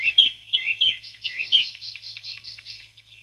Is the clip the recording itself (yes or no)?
no